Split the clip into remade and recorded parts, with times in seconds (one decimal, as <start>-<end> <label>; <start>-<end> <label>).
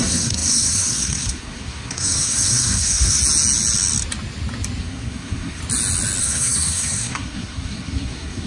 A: 0.0-3.2 remade; 3.2-4.8 recorded; 4.8-5.6 remade; 5.6-6.2 recorded; 6.2-8.5 remade